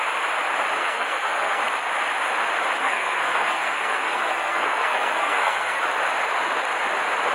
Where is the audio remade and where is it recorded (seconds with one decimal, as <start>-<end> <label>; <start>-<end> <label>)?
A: 0.0-0.8 recorded; 0.8-1.6 remade; 1.6-2.8 recorded; 2.8-5.8 remade; 5.8-7.3 recorded